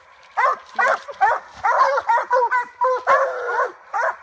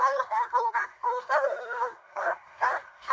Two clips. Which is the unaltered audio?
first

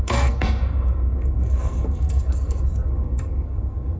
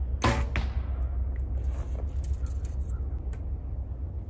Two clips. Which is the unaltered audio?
second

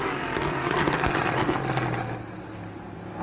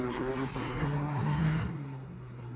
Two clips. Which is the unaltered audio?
first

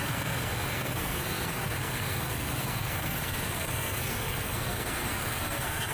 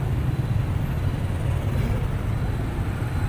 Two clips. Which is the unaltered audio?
second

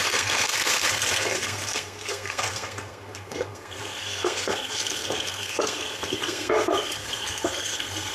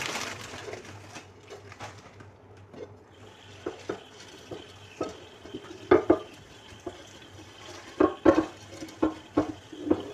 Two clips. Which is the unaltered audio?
second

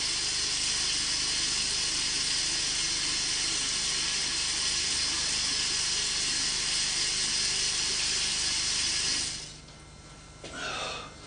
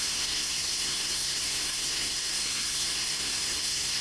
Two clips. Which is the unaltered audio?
first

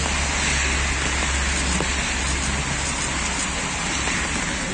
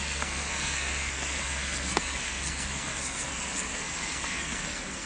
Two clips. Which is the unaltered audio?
first